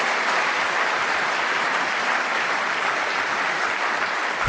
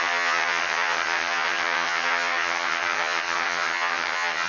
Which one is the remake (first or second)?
second